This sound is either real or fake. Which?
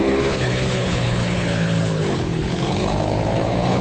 fake